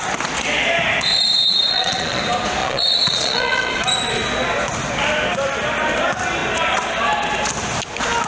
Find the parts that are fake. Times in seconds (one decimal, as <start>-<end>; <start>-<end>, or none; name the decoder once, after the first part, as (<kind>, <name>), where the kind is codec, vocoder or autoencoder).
1.1-2.2 (vocoder, Vocos); 2.6-3.7